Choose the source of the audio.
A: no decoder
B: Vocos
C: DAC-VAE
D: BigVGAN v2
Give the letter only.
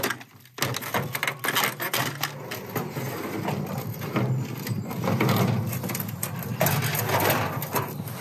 A